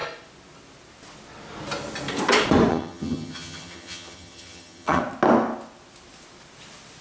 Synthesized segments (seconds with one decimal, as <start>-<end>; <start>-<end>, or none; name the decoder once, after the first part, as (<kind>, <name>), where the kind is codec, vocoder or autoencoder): 2.7-5.0 (vocoder, HiFi-GAN)